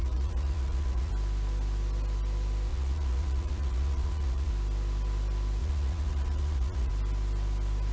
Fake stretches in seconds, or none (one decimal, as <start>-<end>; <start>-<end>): 0.0-1.1; 2.7-4.5; 5.6-6.9